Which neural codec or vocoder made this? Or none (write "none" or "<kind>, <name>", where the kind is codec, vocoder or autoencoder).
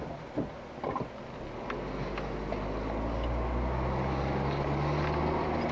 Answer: none